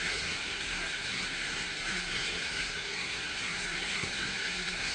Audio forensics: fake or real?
fake